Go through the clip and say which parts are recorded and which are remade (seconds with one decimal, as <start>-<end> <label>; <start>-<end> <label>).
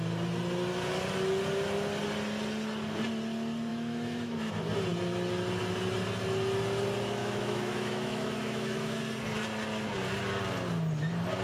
0.0-3.7 recorded; 3.7-4.5 remade; 4.5-7.2 recorded; 7.2-9.0 remade; 9.0-11.4 recorded